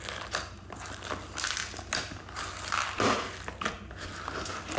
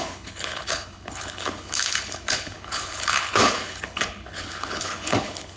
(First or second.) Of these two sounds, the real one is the first